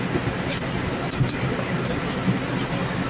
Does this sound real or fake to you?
real